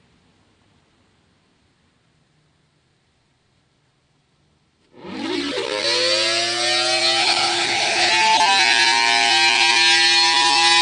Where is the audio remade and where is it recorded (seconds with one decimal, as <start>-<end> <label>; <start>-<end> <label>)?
0.0-7.2 recorded; 7.2-8.1 remade; 8.1-10.8 recorded